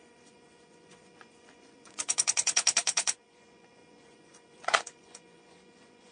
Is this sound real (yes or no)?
no